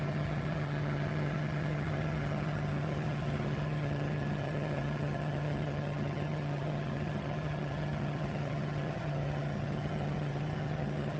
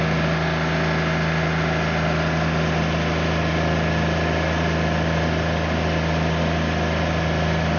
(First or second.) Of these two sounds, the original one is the second